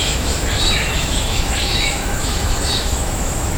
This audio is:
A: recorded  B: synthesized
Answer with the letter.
B